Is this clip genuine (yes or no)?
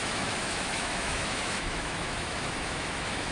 no